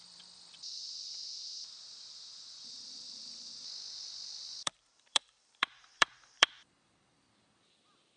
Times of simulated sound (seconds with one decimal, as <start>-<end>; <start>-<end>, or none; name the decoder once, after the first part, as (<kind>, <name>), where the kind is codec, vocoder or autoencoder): 0.0-0.8 (vocoder, BigVGAN v2); 4.4-8.2